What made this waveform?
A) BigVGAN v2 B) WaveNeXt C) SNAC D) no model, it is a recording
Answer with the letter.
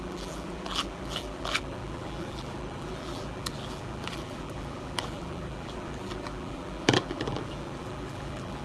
A